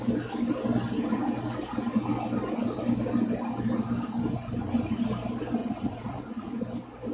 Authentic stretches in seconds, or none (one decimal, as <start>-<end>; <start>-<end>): 0.0-5.6; 6.6-7.1

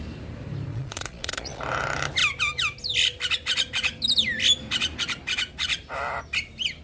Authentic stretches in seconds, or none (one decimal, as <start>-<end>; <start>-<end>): 0.0-0.7; 1.6-6.8